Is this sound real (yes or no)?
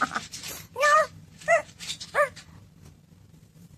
no